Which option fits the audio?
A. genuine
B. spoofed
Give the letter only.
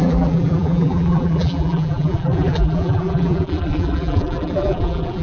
B